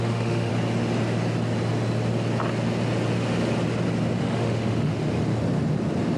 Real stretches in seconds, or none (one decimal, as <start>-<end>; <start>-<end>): 0.5-4.2; 4.9-6.2

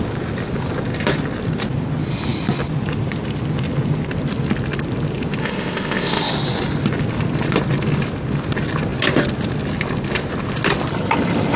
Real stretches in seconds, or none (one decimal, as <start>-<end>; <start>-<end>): 0.0-5.4; 6.3-11.6

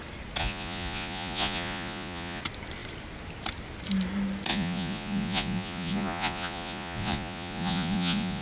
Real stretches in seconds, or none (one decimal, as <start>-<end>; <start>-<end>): 0.0-0.4; 2.4-4.5

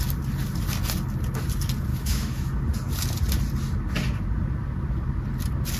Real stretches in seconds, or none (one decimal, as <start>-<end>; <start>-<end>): 0.0-1.9; 2.6-5.8

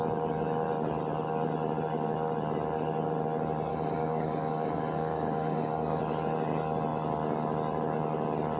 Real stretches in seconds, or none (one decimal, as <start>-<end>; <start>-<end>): 0.0-3.7; 6.0-8.6

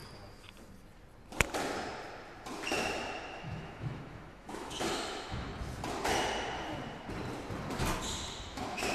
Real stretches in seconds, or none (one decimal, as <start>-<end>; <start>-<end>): 0.0-3.4; 5.5-8.4

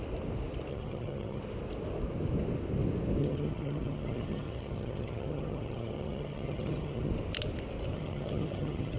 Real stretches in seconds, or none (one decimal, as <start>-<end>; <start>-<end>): 0.0-0.7; 1.4-3.2; 7.1-7.9